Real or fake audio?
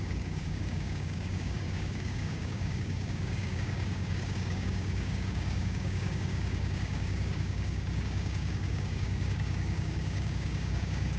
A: fake